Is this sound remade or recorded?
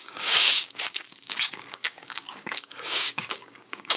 remade